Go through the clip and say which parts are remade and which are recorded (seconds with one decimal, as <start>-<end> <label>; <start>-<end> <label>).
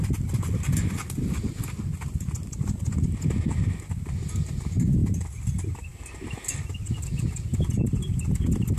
0.0-8.8 recorded